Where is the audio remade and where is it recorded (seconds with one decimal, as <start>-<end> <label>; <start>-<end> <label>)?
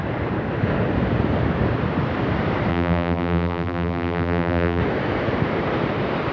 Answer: 0.0-2.7 recorded; 2.7-4.8 remade; 4.8-6.3 recorded